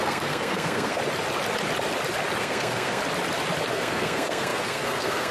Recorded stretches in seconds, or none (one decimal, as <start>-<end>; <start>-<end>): 1.0-2.4; 3.0-3.7